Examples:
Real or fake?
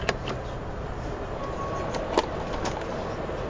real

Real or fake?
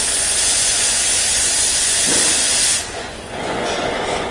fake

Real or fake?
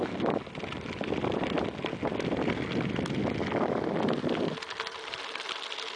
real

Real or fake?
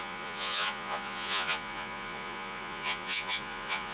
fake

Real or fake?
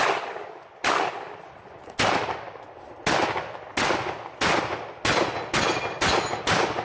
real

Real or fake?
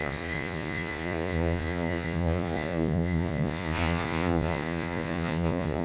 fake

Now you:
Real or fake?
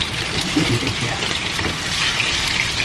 fake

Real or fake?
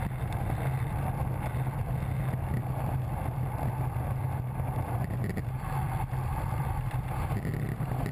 real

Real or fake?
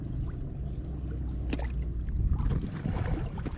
real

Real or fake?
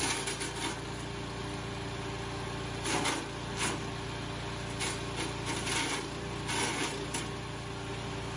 real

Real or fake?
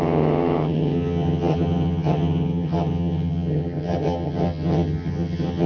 fake